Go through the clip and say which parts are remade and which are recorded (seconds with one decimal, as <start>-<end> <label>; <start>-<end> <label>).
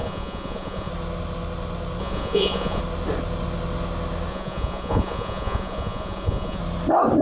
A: 0.0-0.9 remade; 0.9-2.0 recorded; 2.0-2.8 remade; 2.8-4.3 recorded; 4.3-6.6 remade; 6.6-7.2 recorded